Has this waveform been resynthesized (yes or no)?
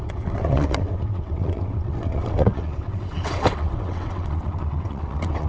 yes